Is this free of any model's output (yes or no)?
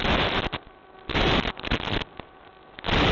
yes